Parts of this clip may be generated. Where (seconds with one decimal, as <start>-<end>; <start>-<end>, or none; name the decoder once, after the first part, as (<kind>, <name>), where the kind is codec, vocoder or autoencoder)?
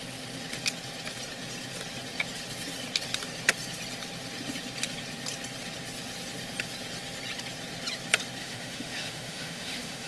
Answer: 8.4-10.1 (autoencoder, DAC-VAE)